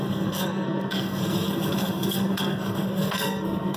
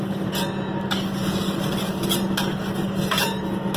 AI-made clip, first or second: first